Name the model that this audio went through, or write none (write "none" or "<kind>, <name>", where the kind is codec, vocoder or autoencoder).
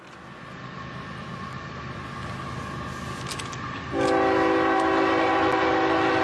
none